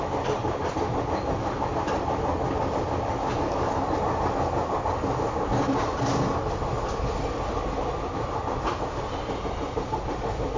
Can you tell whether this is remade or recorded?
recorded